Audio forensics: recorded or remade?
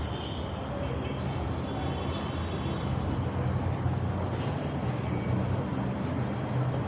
recorded